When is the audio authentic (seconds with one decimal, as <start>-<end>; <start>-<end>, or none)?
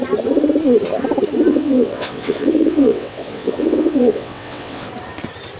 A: 0.0-1.5; 4.9-5.6